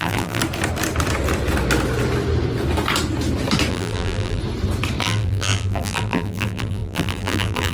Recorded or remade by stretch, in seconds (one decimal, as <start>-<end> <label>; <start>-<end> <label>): 0.0-0.4 remade; 0.4-3.7 recorded; 3.7-4.4 remade; 4.4-5.0 recorded; 5.0-7.7 remade